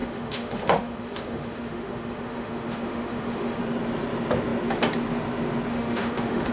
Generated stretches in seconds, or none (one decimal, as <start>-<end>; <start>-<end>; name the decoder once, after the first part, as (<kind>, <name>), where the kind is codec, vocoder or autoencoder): 0.0-3.6 (autoencoder, DAC-VAE); 5.7-6.5